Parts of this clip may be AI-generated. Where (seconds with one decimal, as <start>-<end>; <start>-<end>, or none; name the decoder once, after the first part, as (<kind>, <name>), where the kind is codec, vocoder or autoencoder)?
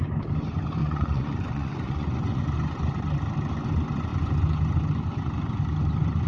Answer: 0.8-2.4 (vocoder, Vocos)